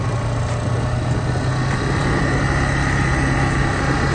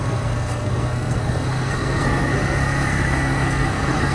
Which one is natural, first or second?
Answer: first